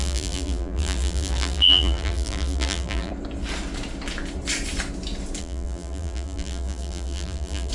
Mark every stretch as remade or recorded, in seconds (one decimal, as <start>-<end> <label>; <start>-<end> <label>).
0.0-3.1 remade; 3.1-5.4 recorded; 5.4-7.7 remade